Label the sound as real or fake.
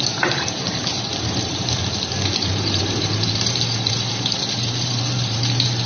fake